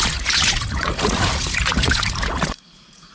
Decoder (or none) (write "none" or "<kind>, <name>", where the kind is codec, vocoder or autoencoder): vocoder, Vocos